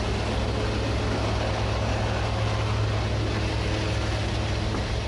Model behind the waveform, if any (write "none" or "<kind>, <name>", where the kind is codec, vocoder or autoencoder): none